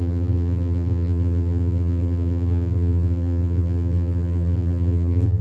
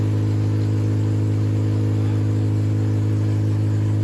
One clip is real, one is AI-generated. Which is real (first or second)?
second